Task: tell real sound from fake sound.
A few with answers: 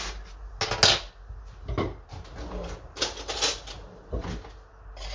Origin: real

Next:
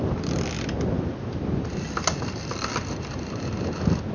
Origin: real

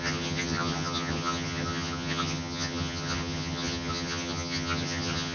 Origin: fake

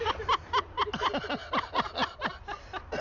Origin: real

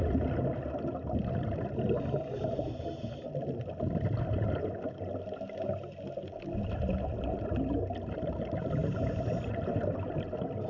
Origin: real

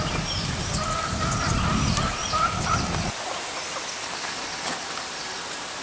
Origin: real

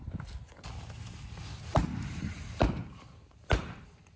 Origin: real